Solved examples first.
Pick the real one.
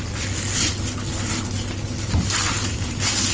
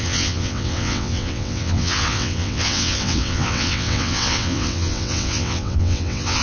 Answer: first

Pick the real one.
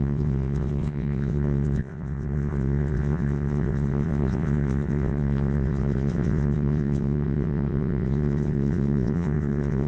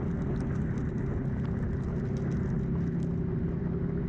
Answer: second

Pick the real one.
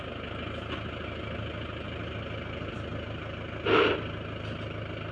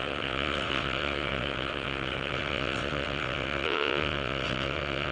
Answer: first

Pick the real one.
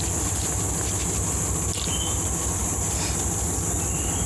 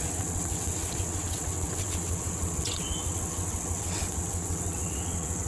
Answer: first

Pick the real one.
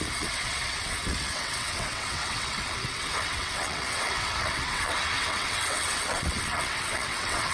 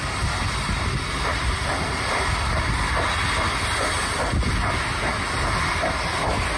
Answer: second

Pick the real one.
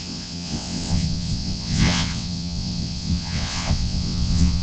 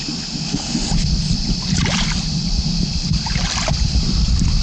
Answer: second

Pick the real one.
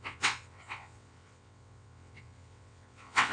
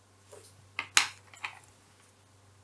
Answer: second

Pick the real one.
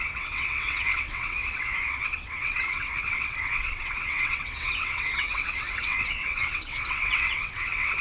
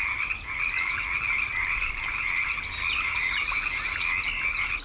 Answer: second